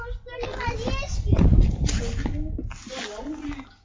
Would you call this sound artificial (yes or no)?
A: no